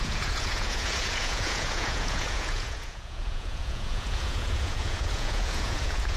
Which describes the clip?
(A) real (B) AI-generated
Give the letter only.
B